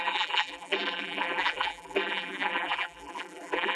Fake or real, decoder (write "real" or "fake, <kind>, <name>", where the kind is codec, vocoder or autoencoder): fake, vocoder, BigVGAN v2